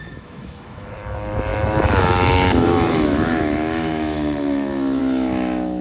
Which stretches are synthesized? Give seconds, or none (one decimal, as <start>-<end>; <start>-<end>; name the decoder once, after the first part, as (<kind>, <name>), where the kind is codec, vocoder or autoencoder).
0.0-5.8 (autoencoder, DAC-VAE)